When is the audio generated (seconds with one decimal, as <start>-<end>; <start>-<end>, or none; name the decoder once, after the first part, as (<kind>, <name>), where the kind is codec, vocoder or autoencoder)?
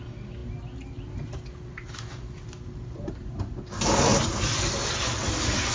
none